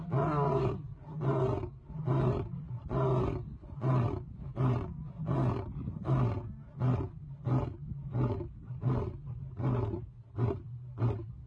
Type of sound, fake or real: real